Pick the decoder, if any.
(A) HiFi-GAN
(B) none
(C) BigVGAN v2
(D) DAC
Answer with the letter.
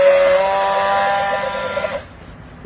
B